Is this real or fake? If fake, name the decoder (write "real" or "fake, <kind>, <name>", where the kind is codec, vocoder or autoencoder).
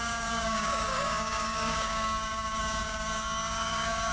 fake, codec, DAC